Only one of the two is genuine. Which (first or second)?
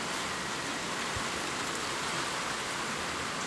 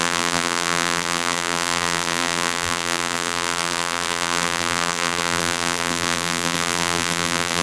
first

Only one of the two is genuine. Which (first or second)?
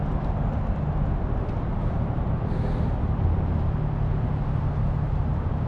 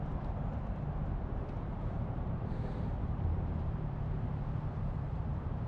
first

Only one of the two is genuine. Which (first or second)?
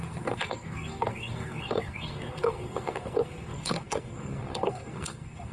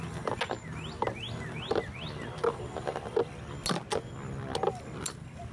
second